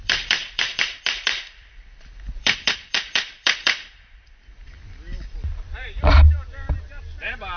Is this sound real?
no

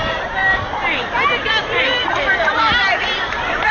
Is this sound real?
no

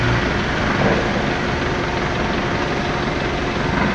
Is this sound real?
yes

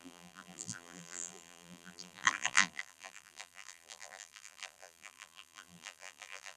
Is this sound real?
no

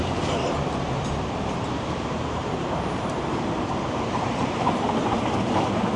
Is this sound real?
no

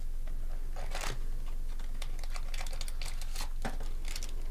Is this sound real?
yes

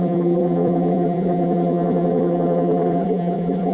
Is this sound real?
no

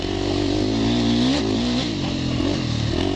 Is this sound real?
yes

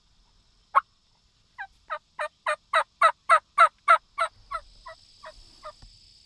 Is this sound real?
yes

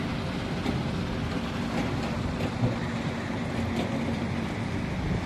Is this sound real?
yes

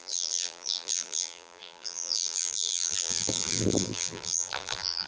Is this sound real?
no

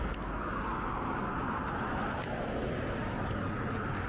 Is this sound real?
yes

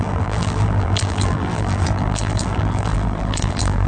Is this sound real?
no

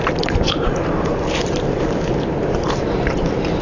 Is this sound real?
no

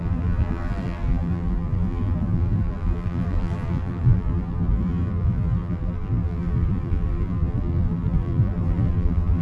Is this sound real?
no